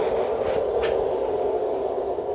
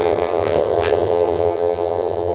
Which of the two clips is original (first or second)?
first